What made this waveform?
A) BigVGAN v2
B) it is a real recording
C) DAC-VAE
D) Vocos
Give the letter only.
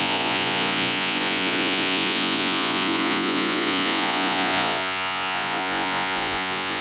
D